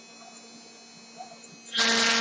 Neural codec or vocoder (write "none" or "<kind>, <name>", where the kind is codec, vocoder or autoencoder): none